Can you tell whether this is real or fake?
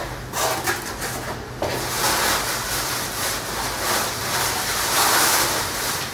real